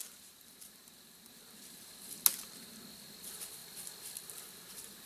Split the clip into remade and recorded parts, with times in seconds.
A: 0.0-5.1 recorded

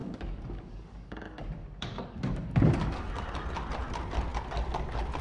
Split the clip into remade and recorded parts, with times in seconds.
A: 0.0-3.1 remade; 3.1-5.2 recorded

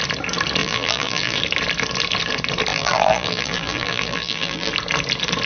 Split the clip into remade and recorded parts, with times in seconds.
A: 0.0-0.6 recorded; 0.6-1.4 remade; 1.4-2.7 recorded; 2.7-4.7 remade; 4.7-5.5 recorded